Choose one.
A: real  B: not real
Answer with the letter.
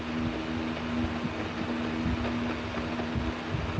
A